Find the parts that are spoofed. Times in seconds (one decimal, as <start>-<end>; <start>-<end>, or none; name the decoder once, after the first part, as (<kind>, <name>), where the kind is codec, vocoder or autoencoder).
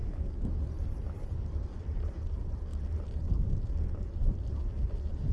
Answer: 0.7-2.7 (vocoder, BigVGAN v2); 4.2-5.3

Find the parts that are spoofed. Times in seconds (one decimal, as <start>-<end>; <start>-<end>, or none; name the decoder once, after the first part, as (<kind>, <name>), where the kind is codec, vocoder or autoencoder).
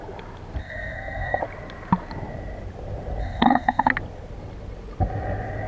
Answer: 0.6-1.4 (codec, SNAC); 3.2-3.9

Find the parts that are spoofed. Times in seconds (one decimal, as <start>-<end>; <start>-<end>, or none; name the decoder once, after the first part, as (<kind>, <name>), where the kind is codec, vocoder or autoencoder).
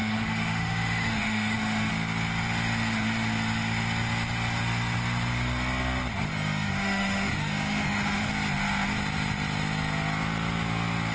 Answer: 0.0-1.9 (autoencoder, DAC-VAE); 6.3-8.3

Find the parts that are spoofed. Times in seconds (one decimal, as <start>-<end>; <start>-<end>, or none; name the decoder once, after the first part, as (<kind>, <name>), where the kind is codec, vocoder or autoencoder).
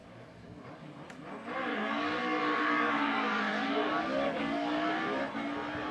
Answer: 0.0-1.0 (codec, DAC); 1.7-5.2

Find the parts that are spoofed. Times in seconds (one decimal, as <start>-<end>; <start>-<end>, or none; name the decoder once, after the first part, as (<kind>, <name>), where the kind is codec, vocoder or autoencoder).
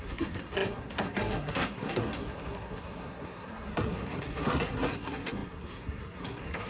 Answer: 0.0-6.7 (codec, SNAC)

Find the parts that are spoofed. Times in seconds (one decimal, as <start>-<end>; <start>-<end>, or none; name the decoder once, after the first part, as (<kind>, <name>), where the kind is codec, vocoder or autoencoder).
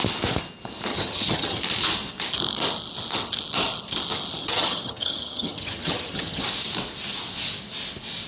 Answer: 0.9-1.6 (vocoder, HiFi-GAN); 4.4-6.4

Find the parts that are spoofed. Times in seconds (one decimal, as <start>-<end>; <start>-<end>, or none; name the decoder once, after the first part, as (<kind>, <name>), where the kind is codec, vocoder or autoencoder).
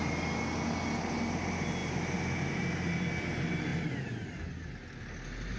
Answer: none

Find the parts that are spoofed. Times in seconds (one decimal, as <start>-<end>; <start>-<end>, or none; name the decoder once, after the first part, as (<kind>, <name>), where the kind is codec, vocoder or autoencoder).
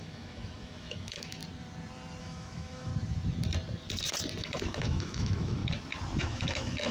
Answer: 0.0-1.4 (autoencoder, DAC-VAE); 2.2-2.9; 4.4-5.6; 6.2-6.9